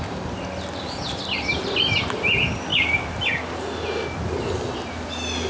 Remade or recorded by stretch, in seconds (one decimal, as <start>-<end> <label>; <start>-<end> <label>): 0.0-5.5 recorded